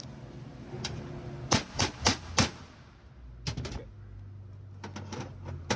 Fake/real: real